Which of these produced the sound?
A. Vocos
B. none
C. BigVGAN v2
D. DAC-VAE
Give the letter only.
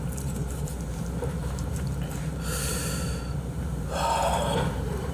C